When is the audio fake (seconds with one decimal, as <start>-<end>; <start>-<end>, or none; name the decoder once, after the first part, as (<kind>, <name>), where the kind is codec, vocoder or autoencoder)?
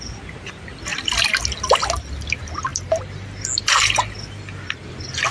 none